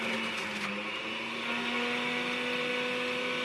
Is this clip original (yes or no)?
yes